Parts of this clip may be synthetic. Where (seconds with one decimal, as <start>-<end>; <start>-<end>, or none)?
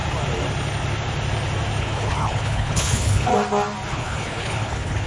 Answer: 1.8-3.3; 3.9-5.1